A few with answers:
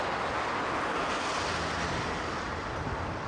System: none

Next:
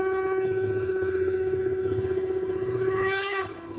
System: codec, HILCodec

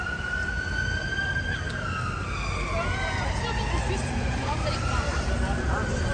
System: none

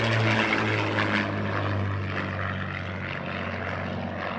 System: none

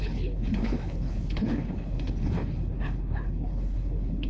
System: codec, HILCodec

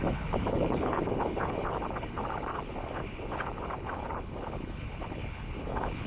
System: codec, HILCodec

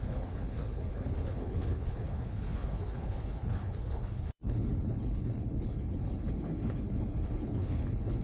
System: codec, HILCodec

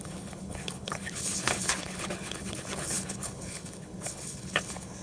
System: codec, HILCodec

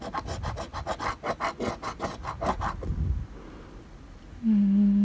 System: none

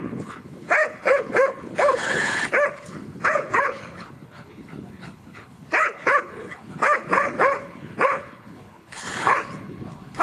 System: codec, HILCodec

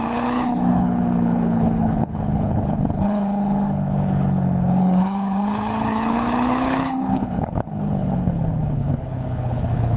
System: codec, HILCodec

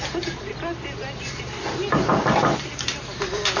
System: none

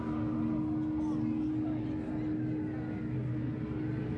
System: none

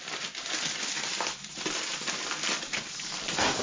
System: none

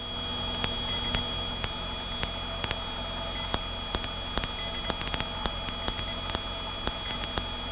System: none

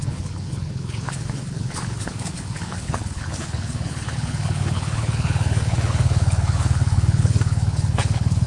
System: codec, HILCodec